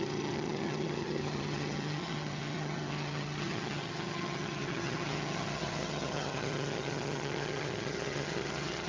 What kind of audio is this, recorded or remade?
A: remade